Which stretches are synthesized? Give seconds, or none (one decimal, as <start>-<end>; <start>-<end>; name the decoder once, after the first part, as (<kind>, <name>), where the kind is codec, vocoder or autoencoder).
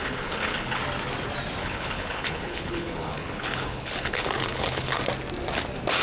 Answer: 0.0-0.8 (codec, HILCodec); 1.6-5.0